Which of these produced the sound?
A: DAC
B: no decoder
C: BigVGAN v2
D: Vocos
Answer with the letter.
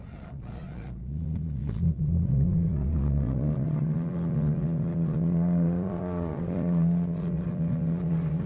D